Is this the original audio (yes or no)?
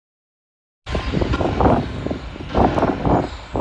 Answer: yes